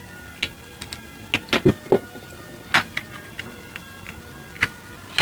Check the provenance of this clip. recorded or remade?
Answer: recorded